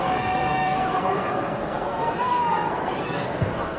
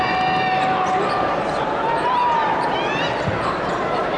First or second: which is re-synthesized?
first